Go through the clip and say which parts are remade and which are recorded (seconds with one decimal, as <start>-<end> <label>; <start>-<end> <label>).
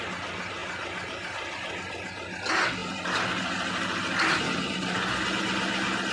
0.0-6.1 recorded